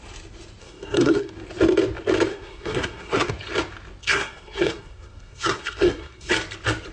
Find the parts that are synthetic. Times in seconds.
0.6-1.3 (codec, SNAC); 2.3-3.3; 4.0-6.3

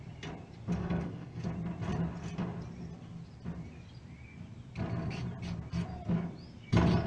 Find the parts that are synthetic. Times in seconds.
0.8-1.4 (codec, SNAC)

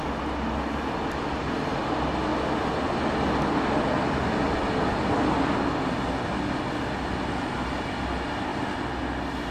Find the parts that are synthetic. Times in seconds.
none

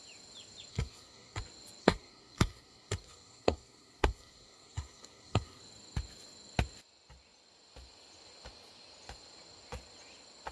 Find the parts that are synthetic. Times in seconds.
0.7-1.4 (codec, SNAC); 1.8-5.6

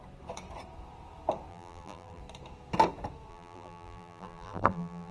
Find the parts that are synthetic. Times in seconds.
1.5-2.2 (vocoder, BigVGAN v2); 3.3-5.1

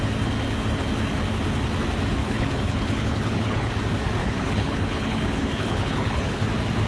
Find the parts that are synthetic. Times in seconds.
2.2-3.7 (codec, HILCodec); 4.2-6.4

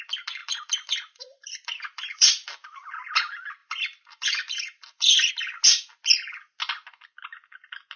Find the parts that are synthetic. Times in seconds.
0.4-2.9 (vocoder, BigVGAN v2); 3.6-5.3

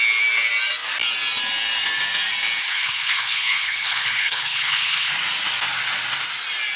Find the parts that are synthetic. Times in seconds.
2.6-5.1 (codec, HILCodec)